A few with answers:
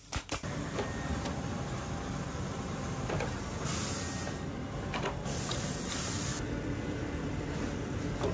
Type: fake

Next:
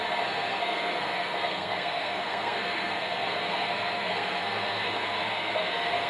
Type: fake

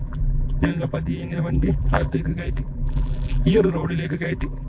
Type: fake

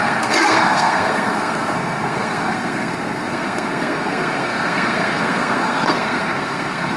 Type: fake